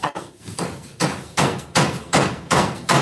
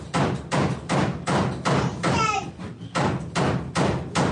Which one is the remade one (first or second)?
first